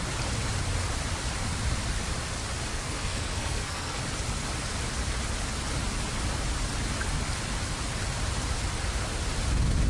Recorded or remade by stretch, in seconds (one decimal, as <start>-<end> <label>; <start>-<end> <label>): 0.0-2.7 recorded; 2.7-4.0 remade; 4.0-9.9 recorded